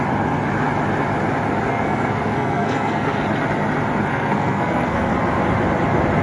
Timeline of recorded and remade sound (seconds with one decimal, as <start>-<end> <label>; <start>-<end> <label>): 0.0-1.7 recorded; 1.7-3.2 remade; 3.2-4.1 recorded; 4.1-5.1 remade; 5.1-6.2 recorded